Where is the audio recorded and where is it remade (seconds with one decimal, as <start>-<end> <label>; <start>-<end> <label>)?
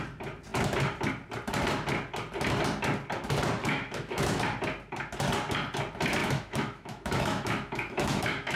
0.0-3.6 recorded; 3.6-4.4 remade; 4.4-6.2 recorded; 6.2-8.6 remade